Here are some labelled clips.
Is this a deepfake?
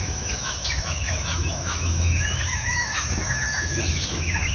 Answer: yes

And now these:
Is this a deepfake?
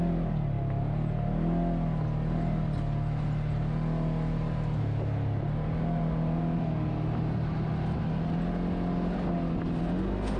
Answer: no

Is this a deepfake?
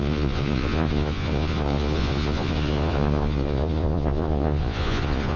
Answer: yes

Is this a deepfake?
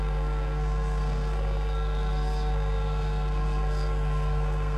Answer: yes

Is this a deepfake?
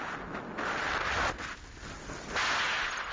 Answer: no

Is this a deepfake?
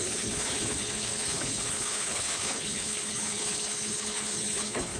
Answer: yes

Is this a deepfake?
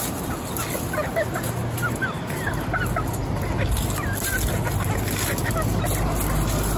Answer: no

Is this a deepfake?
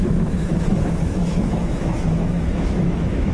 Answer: yes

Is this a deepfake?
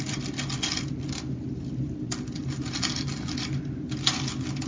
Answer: no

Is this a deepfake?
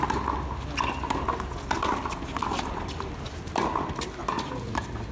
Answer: no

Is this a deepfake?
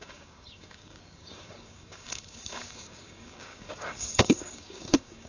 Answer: yes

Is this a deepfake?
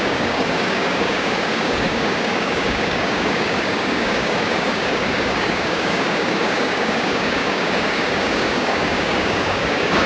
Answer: yes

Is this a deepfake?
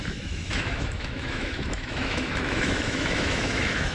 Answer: yes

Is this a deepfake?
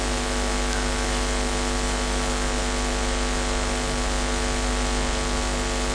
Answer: no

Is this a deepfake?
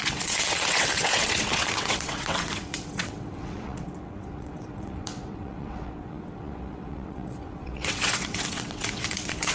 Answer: yes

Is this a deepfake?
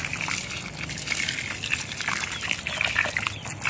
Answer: no